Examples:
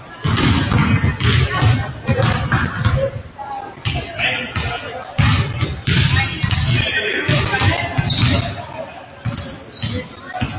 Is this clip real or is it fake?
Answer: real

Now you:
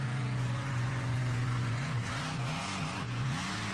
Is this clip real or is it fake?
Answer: fake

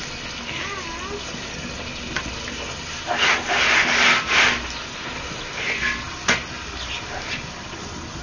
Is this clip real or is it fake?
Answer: real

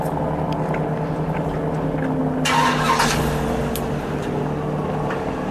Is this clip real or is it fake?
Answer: real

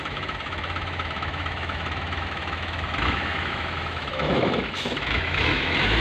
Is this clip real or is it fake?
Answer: fake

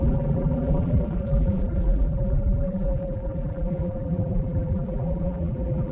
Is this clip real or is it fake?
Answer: fake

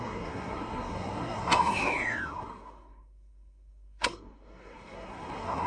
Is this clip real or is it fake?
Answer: fake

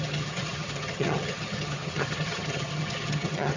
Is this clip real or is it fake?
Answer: fake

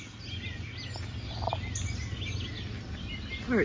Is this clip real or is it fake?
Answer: real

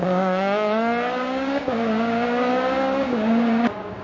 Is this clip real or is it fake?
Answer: fake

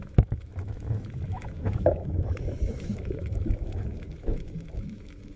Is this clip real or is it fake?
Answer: fake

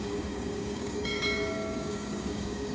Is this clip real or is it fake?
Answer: fake